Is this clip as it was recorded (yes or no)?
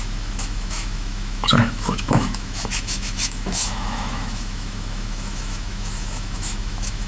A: no